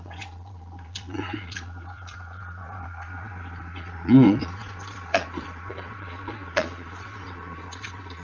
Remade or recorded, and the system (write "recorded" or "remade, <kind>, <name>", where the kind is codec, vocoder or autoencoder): remade, vocoder, Vocos